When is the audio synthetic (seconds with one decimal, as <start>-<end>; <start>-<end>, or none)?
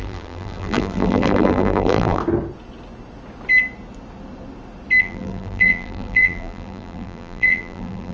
0.0-2.2; 5.0-8.1